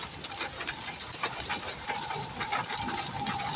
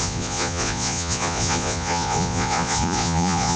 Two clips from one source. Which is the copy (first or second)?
second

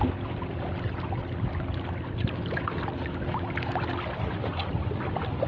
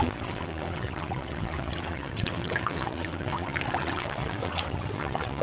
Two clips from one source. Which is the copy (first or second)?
second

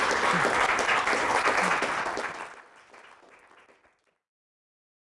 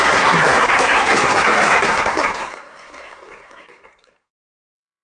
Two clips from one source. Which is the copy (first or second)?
second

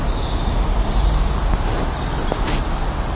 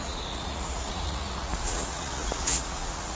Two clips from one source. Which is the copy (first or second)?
second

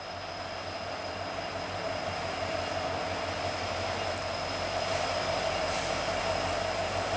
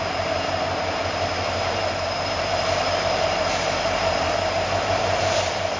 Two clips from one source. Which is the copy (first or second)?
second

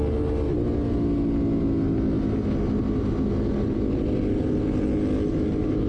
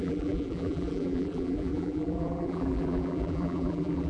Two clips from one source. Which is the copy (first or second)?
second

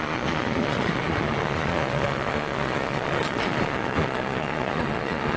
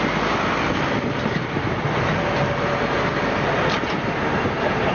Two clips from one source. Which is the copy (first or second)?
first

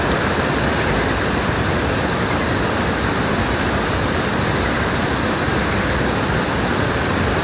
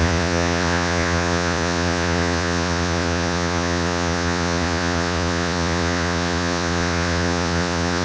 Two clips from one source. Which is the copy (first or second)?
second